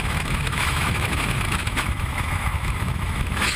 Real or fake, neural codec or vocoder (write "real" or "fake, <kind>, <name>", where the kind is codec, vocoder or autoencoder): fake, autoencoder, DAC-VAE